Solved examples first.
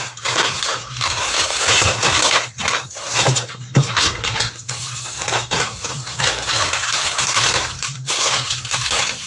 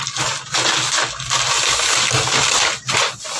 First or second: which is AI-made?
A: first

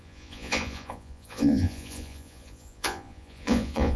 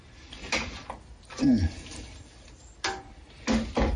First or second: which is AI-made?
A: first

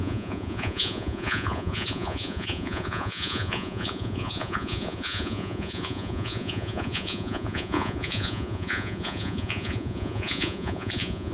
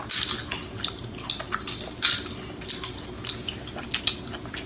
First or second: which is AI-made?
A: first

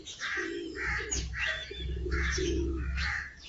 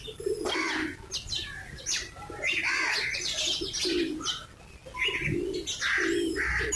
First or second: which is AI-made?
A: first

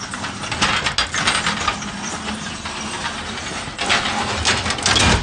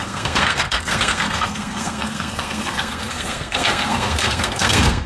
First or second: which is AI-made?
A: second